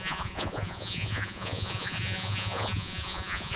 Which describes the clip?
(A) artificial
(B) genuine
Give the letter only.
A